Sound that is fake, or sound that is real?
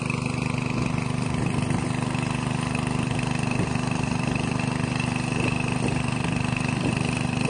real